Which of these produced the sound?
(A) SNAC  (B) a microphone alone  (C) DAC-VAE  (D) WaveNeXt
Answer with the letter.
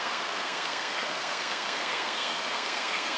A